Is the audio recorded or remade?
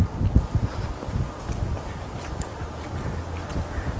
recorded